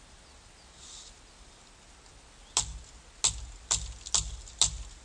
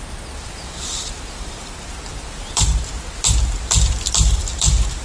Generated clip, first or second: second